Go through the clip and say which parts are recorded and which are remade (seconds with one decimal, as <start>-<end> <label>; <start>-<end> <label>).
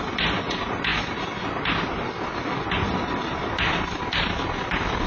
0.0-5.1 recorded